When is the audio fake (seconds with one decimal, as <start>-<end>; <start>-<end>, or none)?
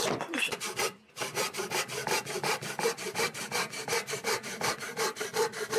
0.0-0.7; 2.0-5.8